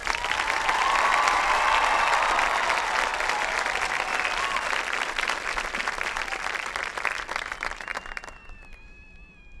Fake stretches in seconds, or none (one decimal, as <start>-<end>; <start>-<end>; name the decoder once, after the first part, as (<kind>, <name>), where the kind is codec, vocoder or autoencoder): 0.0-1.4 (vocoder, BigVGAN v2); 3.1-3.7; 6.3-6.9; 7.9-9.6